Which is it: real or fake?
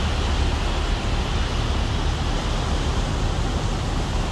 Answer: real